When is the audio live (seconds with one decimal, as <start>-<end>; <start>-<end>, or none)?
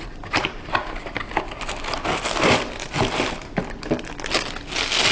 0.0-5.1